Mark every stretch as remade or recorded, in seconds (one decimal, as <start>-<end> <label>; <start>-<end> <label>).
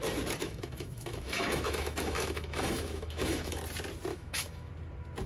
0.0-0.4 recorded; 0.4-3.6 remade; 3.6-4.1 recorded; 4.1-4.7 remade; 4.7-5.3 recorded